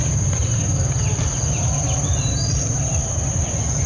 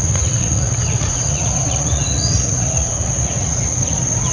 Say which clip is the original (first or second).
first